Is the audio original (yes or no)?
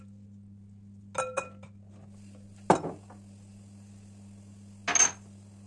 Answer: yes